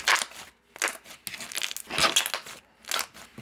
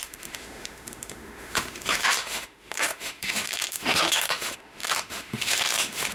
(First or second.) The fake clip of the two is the second